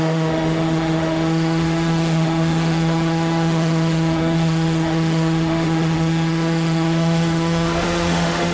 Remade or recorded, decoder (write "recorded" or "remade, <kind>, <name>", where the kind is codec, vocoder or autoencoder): remade, autoencoder, DAC-VAE